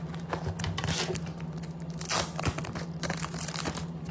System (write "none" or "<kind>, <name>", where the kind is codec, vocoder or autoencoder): none